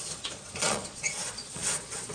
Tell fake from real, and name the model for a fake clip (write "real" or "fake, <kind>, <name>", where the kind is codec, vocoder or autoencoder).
fake, vocoder, Vocos